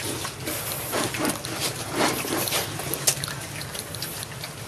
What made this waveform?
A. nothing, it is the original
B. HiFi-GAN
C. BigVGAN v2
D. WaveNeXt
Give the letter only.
A